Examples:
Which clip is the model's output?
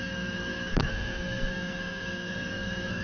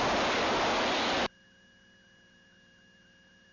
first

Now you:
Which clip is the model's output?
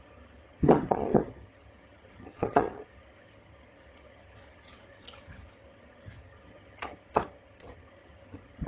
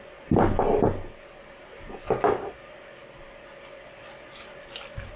first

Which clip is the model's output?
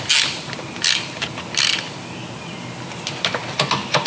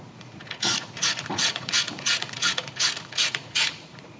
second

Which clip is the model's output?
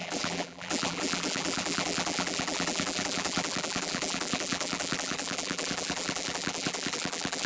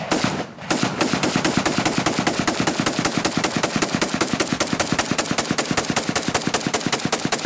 first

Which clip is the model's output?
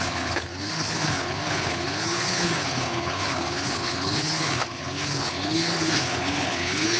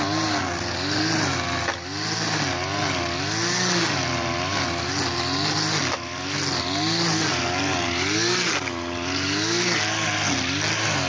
first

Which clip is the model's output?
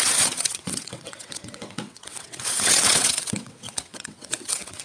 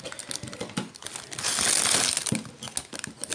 first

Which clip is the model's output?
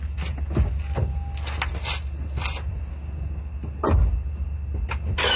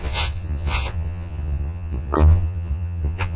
second